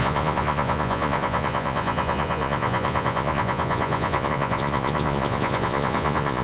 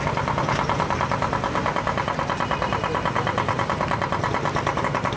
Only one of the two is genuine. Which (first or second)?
second